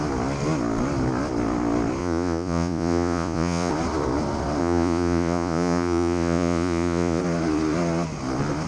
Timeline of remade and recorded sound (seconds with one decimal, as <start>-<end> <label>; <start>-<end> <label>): 0.0-2.0 recorded; 2.0-3.7 remade; 3.7-4.6 recorded; 4.6-7.2 remade; 7.2-8.7 recorded